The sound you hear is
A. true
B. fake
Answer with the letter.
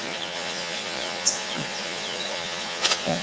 B